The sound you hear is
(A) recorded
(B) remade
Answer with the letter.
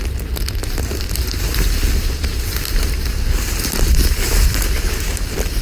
A